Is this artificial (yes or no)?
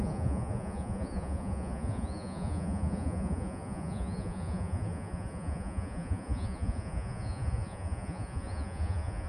yes